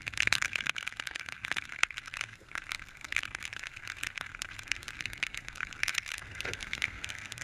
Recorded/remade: remade